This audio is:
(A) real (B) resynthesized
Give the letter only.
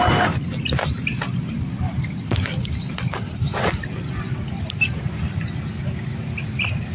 A